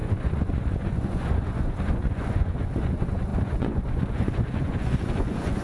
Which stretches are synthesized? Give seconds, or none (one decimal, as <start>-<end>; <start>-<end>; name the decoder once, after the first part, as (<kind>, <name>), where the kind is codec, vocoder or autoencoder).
0.0-5.6 (vocoder, Vocos)